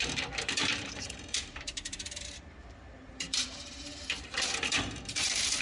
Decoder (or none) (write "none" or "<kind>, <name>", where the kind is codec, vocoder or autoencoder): vocoder, BigVGAN v2